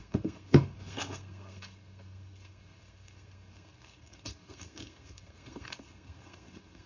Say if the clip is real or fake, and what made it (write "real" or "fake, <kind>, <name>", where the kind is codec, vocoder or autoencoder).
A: fake, codec, SNAC